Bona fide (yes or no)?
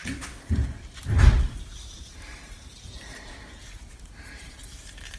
no